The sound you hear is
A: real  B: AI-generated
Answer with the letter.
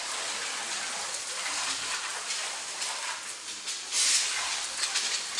B